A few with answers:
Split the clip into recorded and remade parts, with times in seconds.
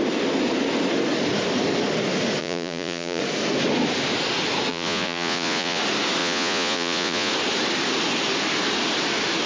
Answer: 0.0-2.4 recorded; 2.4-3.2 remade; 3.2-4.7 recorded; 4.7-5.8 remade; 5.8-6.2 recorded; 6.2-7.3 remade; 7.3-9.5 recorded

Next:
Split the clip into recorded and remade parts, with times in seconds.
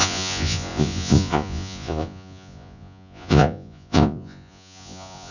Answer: 0.0-5.3 remade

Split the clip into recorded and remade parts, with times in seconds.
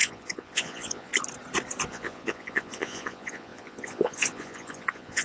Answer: 0.0-1.1 remade; 1.1-1.9 recorded; 1.9-5.2 remade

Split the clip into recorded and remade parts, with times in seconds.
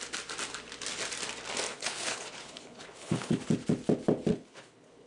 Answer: 0.0-1.7 recorded; 1.7-3.4 remade; 3.4-4.3 recorded; 4.3-5.1 remade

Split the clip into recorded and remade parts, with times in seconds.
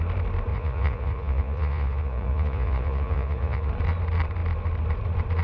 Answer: 0.0-0.5 recorded; 0.5-3.7 remade; 3.7-5.4 recorded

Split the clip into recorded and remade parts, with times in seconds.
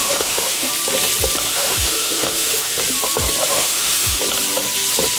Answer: 0.0-0.7 remade; 0.7-1.5 recorded; 1.5-2.8 remade; 2.8-3.5 recorded; 3.5-4.2 remade; 4.2-5.2 recorded